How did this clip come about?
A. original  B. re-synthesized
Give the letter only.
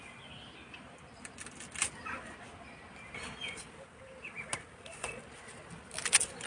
A